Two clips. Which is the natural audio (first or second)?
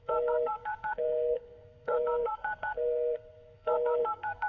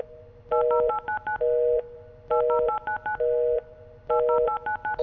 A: second